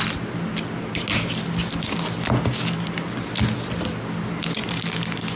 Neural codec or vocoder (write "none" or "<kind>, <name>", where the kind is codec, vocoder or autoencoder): none